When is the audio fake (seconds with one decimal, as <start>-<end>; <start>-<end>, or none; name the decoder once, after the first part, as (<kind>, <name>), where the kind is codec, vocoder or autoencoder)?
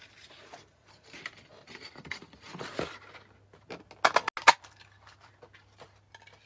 0.6-2.9 (vocoder, BigVGAN v2); 4.4-5.3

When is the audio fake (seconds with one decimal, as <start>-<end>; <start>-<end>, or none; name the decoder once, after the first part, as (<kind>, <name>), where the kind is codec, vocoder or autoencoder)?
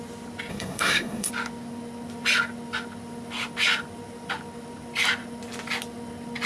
0.5-1.3 (codec, SNAC)